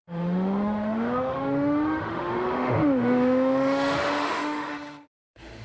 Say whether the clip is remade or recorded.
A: remade